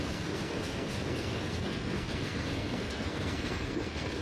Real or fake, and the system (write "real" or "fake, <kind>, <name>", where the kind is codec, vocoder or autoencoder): fake, codec, SNAC